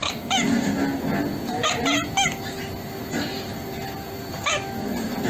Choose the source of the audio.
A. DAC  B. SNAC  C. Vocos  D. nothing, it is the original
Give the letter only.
D